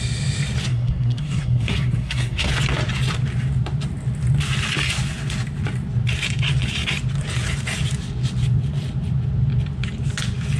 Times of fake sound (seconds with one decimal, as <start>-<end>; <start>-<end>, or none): 0.7-2.5